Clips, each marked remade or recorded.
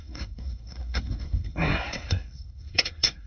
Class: remade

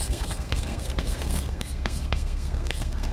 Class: remade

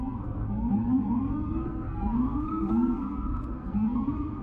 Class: remade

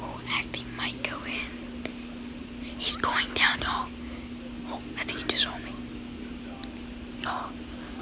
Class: recorded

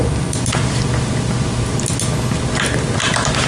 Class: recorded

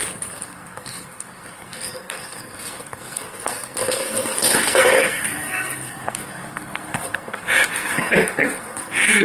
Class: remade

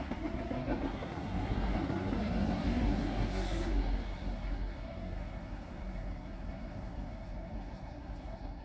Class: remade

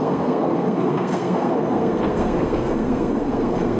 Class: remade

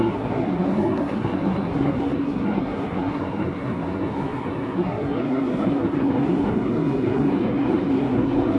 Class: remade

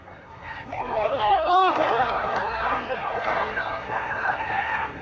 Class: remade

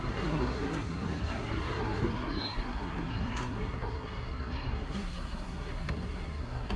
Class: remade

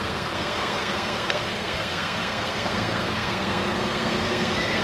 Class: remade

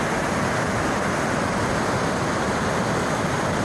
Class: recorded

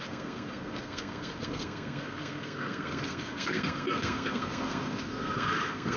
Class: remade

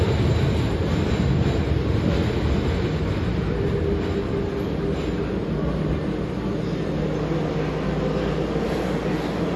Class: recorded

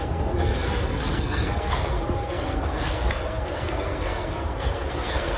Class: remade